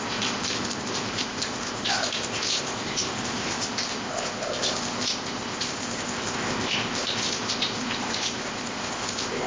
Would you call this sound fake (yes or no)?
yes